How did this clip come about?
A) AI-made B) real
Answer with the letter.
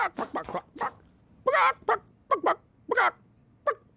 B